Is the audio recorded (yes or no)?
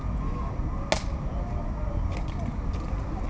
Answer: yes